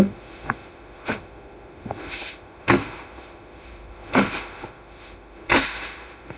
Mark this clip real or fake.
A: fake